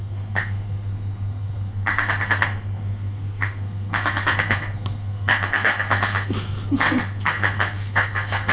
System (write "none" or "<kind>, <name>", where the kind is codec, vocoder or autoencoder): codec, SNAC